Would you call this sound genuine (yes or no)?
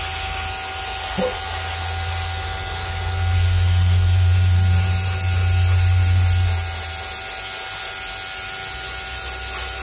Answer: yes